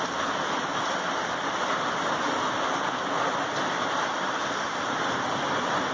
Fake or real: real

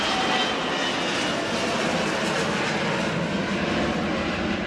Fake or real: real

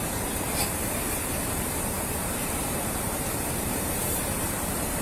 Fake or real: fake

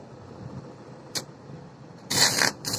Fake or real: fake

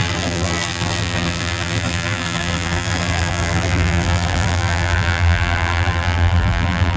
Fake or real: fake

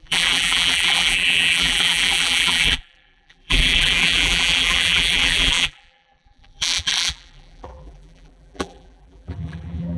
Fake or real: fake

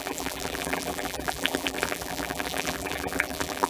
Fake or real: fake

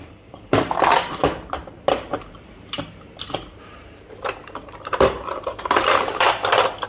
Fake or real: fake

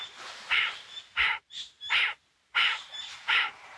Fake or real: fake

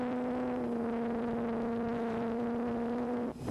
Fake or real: fake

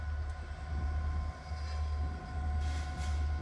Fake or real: real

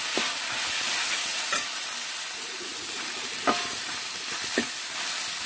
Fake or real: real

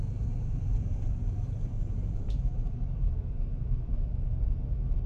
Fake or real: fake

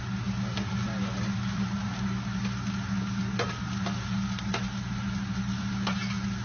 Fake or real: real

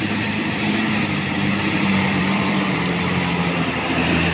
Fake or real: fake